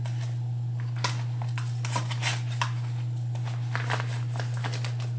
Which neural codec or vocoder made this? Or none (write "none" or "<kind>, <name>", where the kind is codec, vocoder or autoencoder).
none